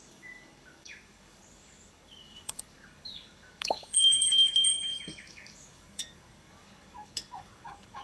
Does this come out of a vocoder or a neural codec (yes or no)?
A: yes